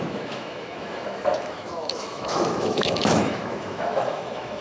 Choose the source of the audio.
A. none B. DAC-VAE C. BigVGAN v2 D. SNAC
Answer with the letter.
B